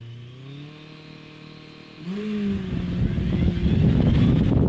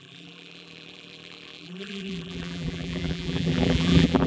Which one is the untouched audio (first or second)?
first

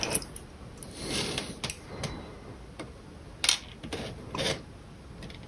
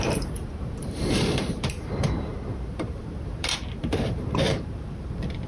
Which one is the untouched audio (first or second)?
first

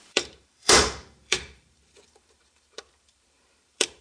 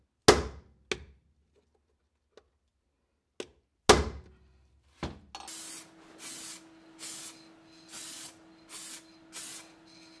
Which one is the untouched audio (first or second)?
second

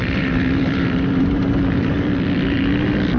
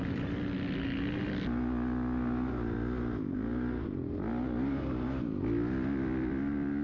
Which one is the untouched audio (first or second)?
second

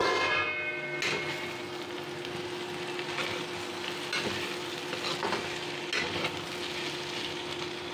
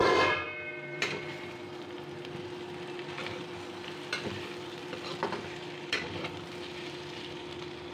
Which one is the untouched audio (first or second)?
first